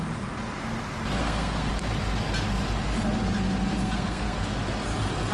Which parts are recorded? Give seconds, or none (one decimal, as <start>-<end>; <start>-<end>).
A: 0.0-1.2; 1.7-3.8; 4.4-5.3